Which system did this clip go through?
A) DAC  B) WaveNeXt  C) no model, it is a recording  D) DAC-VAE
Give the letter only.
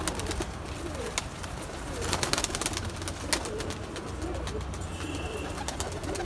C